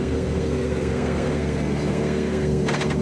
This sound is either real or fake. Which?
fake